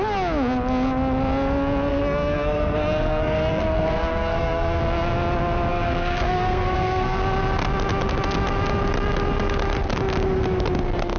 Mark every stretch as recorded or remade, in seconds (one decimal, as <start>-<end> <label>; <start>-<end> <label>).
0.0-1.9 recorded; 1.9-4.8 remade; 4.8-5.7 recorded; 5.7-7.2 remade; 7.2-11.2 recorded